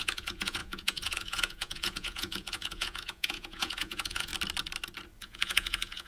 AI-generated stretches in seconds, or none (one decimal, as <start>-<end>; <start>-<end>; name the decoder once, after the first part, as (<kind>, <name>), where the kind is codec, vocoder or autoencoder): 0.0-4.3 (vocoder, Vocos); 5.2-6.1